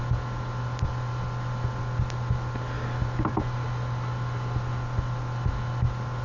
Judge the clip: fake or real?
real